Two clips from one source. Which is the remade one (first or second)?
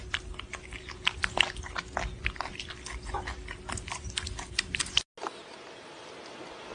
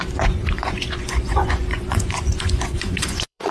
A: second